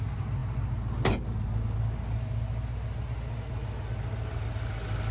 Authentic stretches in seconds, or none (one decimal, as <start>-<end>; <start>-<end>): 0.0-5.1